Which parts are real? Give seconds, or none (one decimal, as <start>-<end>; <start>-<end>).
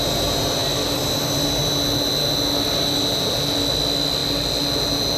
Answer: 0.0-5.2